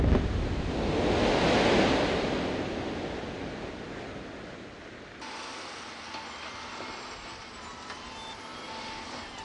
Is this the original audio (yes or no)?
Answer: yes